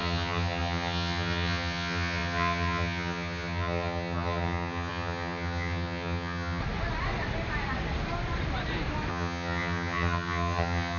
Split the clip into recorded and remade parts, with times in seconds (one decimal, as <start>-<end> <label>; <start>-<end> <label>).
0.0-6.6 remade; 6.6-9.1 recorded; 9.1-11.0 remade